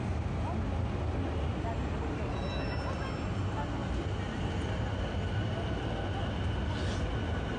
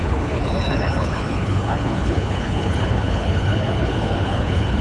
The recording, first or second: first